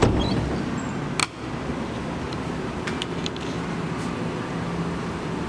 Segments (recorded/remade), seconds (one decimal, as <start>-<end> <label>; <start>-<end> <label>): 0.0-5.5 recorded